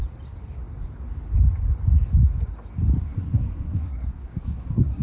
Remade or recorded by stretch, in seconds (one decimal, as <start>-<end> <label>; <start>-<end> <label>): 0.0-3.0 recorded; 3.0-5.0 remade